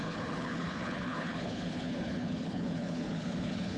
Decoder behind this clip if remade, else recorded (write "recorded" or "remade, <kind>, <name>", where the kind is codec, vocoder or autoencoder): remade, codec, HILCodec